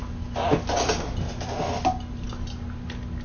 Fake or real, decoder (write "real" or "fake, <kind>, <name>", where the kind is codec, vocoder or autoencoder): real